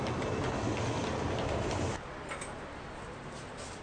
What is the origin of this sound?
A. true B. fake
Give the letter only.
A